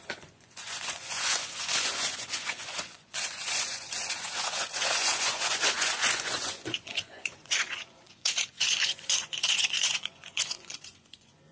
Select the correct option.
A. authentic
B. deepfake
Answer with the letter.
B